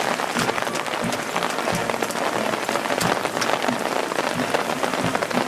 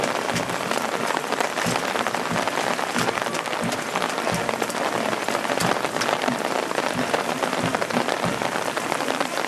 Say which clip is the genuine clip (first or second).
first